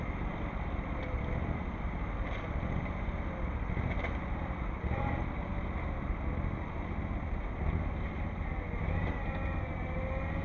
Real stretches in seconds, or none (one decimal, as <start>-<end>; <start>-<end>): 0.0-10.4